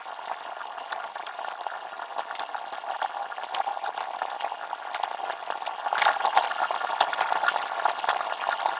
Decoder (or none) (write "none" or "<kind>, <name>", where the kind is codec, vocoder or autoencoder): none